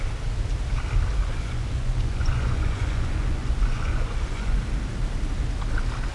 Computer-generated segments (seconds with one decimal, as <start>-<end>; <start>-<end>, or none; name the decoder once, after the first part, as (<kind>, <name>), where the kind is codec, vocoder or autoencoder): 1.2-4.6 (vocoder, Vocos)